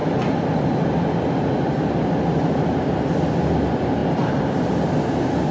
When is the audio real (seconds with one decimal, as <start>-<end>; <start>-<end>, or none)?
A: 0.0-5.5